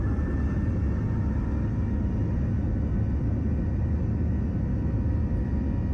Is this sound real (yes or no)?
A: yes